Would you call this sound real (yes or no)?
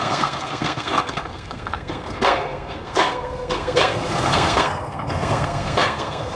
no